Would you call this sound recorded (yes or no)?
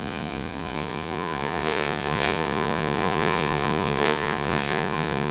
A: no